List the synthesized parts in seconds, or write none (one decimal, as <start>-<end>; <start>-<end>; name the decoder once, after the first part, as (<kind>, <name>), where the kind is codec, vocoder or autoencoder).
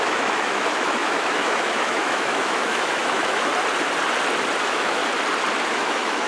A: 0.0-3.5 (autoencoder, DAC-VAE); 4.6-5.0; 5.7-6.3